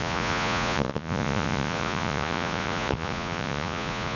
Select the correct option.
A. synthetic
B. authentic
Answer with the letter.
A